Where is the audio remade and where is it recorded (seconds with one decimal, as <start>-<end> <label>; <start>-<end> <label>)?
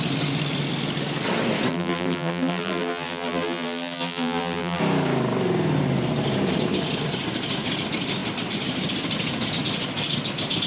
0.0-1.7 recorded; 1.7-4.8 remade; 4.8-10.7 recorded